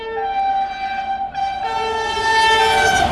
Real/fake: real